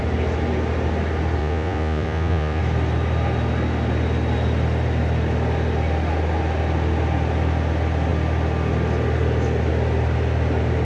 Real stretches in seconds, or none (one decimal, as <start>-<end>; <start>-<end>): 0.0-1.4; 2.6-10.8